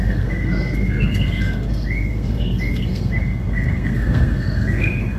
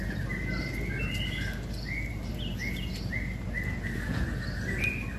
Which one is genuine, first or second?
second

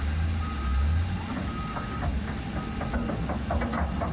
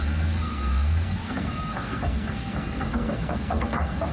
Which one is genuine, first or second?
first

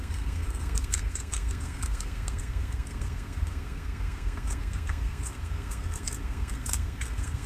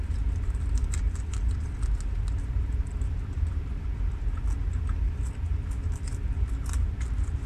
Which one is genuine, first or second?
second